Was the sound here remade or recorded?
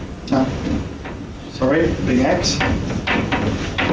recorded